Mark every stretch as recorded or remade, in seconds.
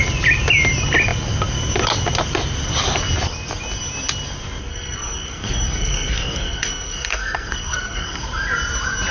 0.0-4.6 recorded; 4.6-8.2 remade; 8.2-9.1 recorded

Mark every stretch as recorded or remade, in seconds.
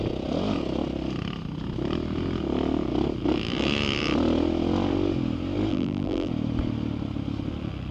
0.0-5.7 recorded; 5.7-6.3 remade; 6.3-7.9 recorded